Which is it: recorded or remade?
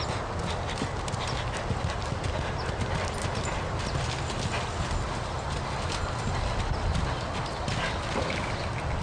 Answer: recorded